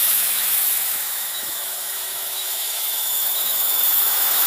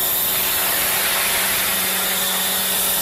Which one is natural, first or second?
second